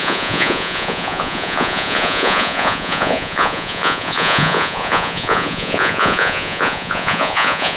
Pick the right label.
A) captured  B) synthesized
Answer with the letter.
B